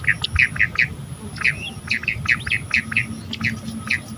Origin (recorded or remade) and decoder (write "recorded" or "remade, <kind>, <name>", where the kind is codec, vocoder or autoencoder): recorded